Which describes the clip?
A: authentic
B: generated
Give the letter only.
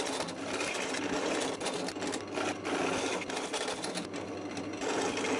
A